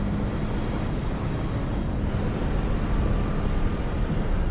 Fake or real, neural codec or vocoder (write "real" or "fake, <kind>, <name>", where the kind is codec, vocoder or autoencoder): real